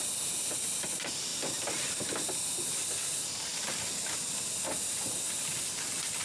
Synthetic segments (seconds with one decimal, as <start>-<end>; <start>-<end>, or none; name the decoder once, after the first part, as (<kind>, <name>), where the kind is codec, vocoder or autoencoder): none